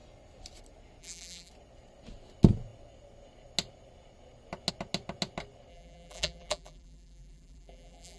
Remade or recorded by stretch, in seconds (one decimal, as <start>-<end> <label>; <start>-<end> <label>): 0.0-1.0 recorded; 1.0-1.5 remade; 1.5-5.7 recorded; 5.7-8.2 remade